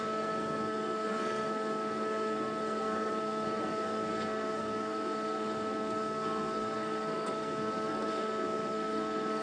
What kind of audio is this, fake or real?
fake